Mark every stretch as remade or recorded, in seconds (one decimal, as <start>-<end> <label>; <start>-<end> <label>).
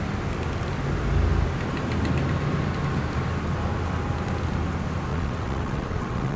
0.0-5.1 recorded; 5.1-6.4 remade